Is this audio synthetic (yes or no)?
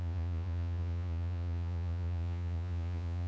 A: yes